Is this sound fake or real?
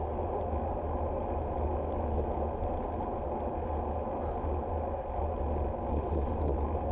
real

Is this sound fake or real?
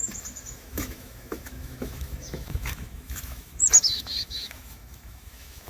fake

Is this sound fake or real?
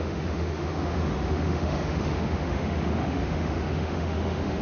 fake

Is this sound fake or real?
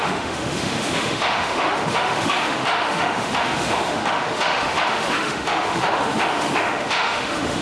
fake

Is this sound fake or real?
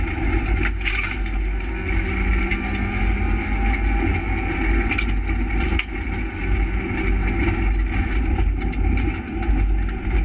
real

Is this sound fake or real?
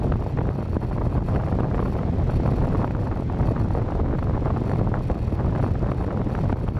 real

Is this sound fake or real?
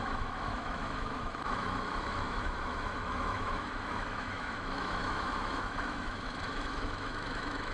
fake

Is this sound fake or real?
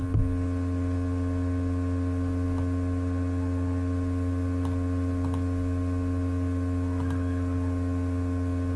real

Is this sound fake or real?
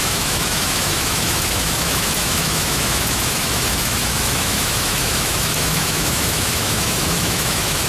fake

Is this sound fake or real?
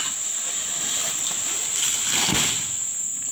real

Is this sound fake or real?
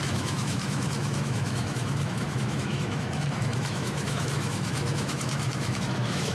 fake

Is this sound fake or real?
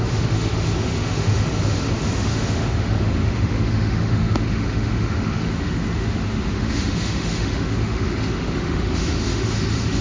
fake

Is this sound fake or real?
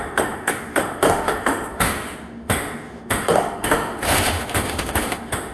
fake